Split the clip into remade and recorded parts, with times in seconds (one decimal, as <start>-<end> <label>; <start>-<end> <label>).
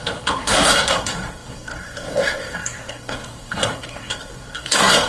0.0-5.1 remade